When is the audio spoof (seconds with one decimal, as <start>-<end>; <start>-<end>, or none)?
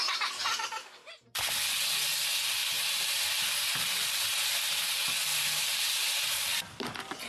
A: 0.8-1.5; 5.2-7.3